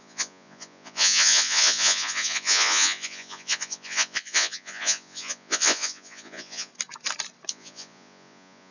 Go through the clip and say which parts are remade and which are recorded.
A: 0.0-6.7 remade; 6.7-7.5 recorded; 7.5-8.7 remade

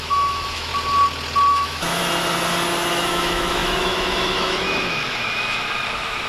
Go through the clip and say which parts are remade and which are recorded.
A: 0.0-0.7 remade; 0.7-1.5 recorded; 1.5-2.0 remade; 2.0-2.9 recorded; 2.9-6.3 remade